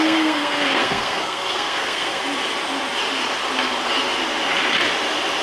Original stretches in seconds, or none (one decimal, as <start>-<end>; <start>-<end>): 2.2-5.4